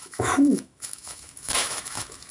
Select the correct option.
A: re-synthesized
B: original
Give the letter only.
A